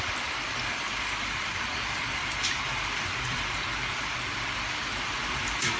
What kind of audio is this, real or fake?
fake